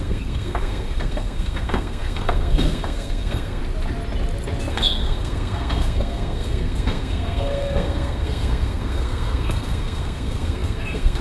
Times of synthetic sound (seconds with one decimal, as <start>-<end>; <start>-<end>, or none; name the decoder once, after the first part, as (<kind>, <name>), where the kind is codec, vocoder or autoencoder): 0.0-3.6 (codec, SNAC); 4.7-11.2